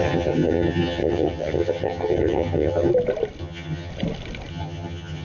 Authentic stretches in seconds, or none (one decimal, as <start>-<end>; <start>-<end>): 2.9-3.4; 3.9-4.5